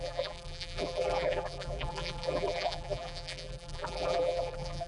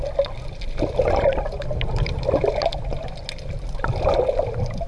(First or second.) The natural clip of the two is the second